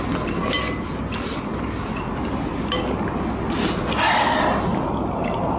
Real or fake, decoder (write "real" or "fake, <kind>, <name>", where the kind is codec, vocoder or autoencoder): real